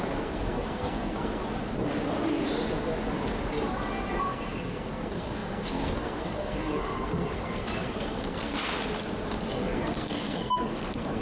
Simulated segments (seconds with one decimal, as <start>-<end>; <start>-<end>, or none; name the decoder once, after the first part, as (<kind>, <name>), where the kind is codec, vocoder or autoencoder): 0.0-1.4 (codec, SNAC); 4.1-8.7; 9.5-11.2